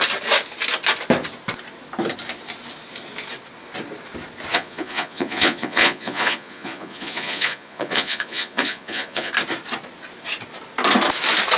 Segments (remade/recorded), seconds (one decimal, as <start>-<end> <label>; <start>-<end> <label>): 0.0-4.5 recorded; 4.5-9.3 remade; 9.3-11.6 recorded